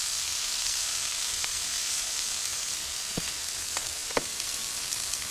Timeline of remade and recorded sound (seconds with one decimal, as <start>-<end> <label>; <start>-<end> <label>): 0.0-5.3 remade